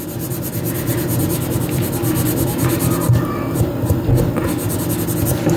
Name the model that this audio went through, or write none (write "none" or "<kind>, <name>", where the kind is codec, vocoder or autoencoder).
none